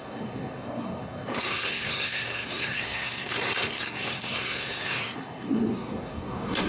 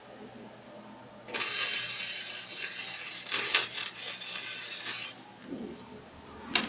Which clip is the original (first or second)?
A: second